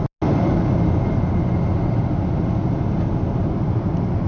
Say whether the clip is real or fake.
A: real